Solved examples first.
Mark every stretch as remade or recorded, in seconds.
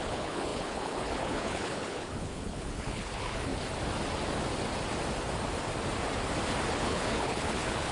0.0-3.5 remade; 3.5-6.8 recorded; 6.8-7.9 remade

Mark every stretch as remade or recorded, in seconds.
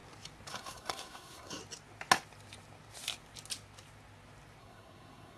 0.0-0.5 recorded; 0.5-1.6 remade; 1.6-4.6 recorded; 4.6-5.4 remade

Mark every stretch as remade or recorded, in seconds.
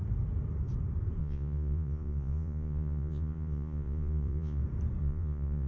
0.0-1.2 recorded; 1.2-4.6 remade; 4.6-5.0 recorded; 5.0-5.7 remade